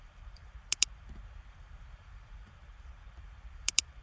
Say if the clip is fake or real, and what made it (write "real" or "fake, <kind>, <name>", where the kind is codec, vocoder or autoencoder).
fake, vocoder, BigVGAN v2